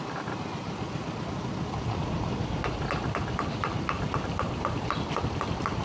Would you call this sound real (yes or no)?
yes